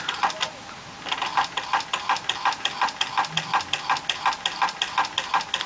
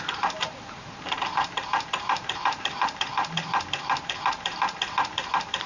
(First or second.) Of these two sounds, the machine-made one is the second